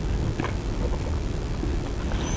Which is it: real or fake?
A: real